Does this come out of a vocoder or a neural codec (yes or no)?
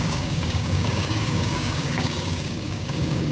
yes